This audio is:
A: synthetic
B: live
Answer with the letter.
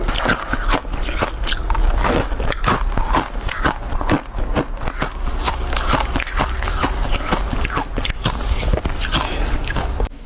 B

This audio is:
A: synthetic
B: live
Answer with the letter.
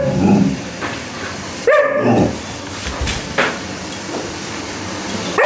A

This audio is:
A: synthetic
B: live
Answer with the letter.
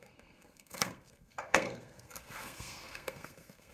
A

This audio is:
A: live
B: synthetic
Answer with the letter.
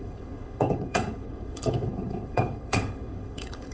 B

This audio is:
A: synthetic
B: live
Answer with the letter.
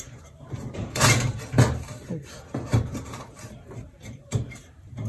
A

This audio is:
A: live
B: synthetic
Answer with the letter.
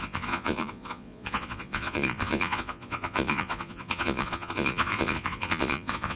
B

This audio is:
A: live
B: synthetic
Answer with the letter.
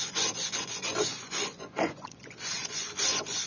B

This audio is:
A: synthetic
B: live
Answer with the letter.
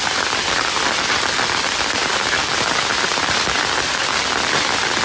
B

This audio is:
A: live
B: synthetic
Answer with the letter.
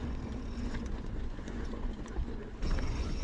B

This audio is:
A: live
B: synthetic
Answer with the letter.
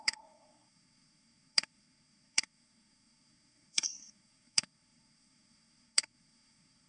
B